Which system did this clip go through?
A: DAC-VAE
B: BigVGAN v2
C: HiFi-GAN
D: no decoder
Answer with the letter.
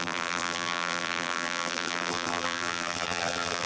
B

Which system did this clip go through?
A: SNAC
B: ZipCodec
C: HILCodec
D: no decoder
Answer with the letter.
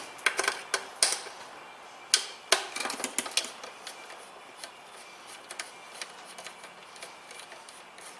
D